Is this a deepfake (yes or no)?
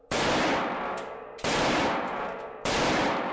no